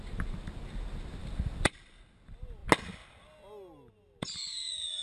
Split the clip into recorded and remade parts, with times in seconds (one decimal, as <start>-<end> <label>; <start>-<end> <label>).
0.0-1.2 recorded; 1.2-2.2 remade; 2.2-5.0 recorded